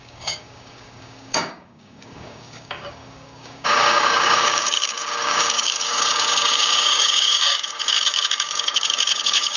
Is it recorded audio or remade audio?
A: remade